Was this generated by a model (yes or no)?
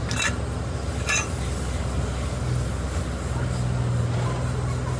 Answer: no